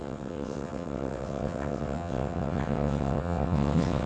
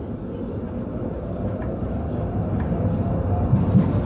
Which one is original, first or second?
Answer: second